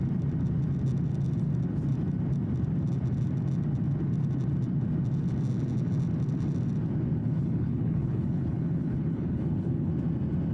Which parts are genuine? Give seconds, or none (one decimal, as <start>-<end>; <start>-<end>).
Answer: 0.0-7.2; 9.9-10.5